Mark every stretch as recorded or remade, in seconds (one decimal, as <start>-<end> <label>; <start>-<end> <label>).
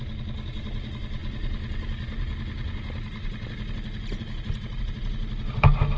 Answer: 0.0-6.0 recorded